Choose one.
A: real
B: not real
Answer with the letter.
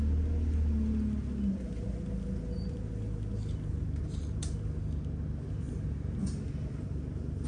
A